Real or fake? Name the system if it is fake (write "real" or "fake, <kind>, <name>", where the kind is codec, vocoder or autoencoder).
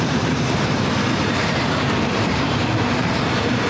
fake, vocoder, BigVGAN v2